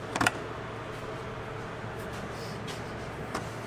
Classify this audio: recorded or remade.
recorded